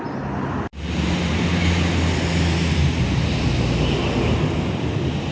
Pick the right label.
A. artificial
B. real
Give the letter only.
B